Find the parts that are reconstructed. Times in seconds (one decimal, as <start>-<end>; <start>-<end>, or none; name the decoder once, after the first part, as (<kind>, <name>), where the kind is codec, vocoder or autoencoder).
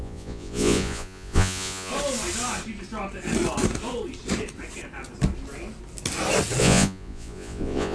0.0-1.9 (vocoder, Vocos); 6.6-7.9